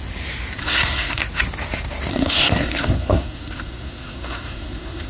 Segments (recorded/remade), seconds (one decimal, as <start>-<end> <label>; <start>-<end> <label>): 0.0-0.6 recorded; 0.6-1.2 remade; 1.2-2.1 recorded; 2.1-5.1 remade